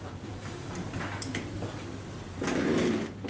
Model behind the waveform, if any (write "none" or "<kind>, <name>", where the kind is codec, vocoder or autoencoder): none